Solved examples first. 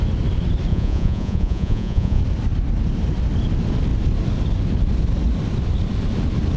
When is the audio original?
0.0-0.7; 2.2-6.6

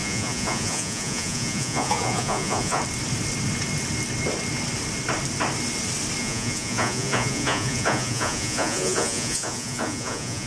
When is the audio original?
2.8-6.2

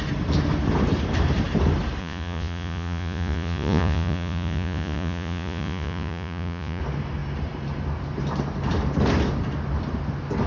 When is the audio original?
0.0-2.0; 6.8-10.5

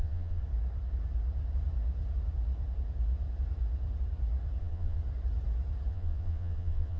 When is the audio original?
0.4-4.6; 5.0-5.9

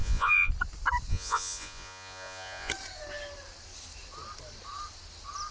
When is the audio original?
0.5-1.1; 2.7-5.5

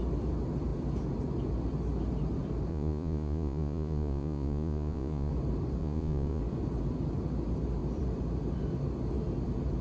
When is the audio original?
0.0-2.7; 5.3-5.8; 6.4-9.8

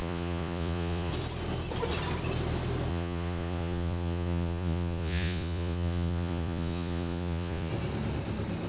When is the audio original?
1.1-2.9; 7.7-8.7